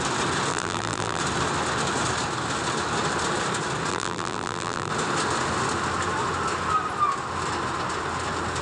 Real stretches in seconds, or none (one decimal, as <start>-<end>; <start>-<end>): 0.0-0.5; 1.2-3.9; 4.9-8.6